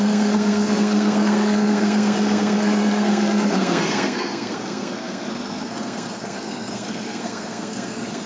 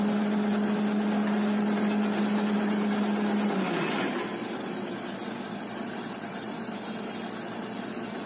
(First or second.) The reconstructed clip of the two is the first